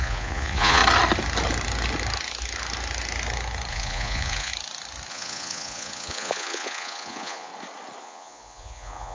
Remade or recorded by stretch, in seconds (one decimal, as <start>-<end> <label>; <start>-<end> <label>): 0.0-0.8 remade; 0.8-3.7 recorded; 3.7-4.5 remade; 4.5-5.1 recorded; 5.1-7.5 remade; 7.5-8.0 recorded; 8.0-9.1 remade